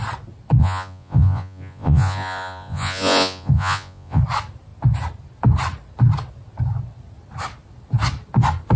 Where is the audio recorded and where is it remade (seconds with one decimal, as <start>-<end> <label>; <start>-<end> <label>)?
0.0-0.6 recorded; 0.6-4.2 remade; 4.2-8.8 recorded